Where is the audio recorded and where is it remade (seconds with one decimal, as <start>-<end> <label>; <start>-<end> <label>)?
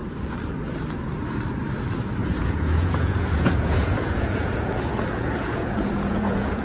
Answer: 0.0-2.2 recorded; 2.2-6.6 remade